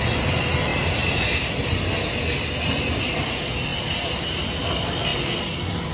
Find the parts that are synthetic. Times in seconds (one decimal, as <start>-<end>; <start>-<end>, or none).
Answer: 5.1-5.9